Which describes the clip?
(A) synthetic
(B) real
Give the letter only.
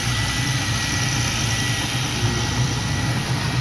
A